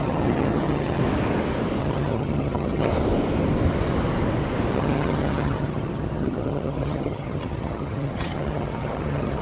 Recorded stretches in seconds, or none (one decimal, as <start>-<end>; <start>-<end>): 1.0-1.8; 2.9-4.7

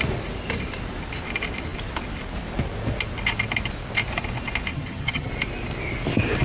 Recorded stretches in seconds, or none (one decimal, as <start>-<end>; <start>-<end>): 0.0-4.7; 5.3-6.4

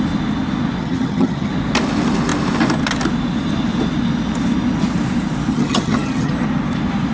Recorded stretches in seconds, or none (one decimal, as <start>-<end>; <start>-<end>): 0.0-0.8; 1.5-5.5; 6.3-7.1

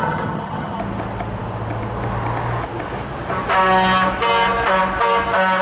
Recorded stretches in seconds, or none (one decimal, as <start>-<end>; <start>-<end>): 0.8-5.6